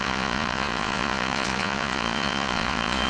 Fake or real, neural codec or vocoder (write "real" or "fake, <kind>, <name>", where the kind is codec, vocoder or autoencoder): fake, vocoder, Vocos